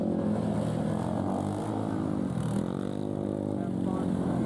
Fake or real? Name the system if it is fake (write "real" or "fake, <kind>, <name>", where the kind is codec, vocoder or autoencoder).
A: real